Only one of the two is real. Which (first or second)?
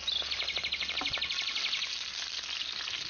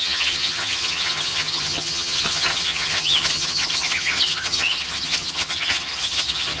first